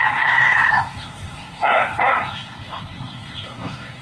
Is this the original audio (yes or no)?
no